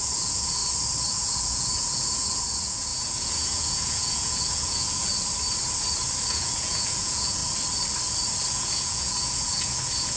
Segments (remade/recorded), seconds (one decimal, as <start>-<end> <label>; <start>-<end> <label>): 0.0-0.6 remade; 0.6-1.1 recorded; 1.1-5.1 remade; 5.1-6.3 recorded; 6.3-7.4 remade; 7.4-8.5 recorded; 8.5-10.2 remade